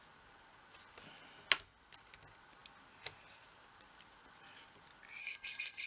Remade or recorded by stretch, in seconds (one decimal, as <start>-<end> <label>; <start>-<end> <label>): 0.0-5.2 recorded; 5.2-5.9 remade